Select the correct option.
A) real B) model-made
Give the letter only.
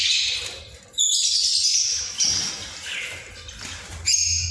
A